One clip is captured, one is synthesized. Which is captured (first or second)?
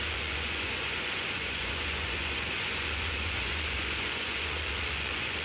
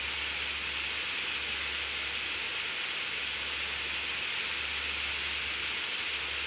second